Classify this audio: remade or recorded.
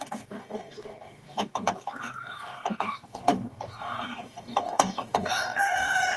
remade